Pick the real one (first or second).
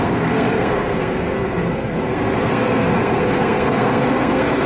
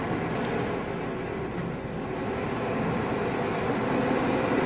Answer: second